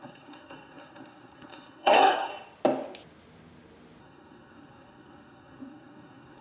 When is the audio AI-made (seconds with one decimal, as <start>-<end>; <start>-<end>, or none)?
0.0-2.3; 4.0-6.4